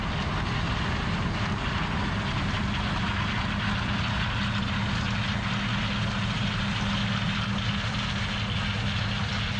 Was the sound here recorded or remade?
recorded